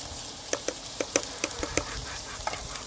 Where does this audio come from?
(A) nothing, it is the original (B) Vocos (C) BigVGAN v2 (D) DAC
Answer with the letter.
C